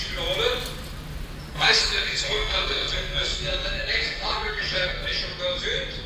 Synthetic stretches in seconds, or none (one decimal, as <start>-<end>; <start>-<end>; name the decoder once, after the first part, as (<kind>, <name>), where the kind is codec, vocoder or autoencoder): 1.5-5.2 (codec, SNAC)